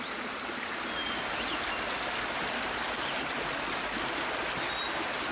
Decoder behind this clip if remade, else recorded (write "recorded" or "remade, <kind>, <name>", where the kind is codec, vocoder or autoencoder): recorded